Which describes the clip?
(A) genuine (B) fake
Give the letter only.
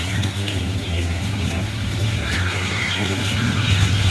B